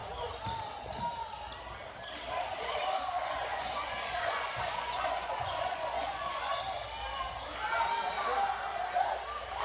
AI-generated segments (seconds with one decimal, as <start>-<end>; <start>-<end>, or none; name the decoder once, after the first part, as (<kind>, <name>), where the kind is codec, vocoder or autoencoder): 3.1-6.5 (vocoder, Vocos)